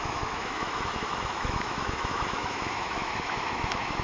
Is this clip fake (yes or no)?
yes